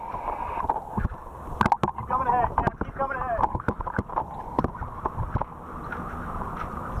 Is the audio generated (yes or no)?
no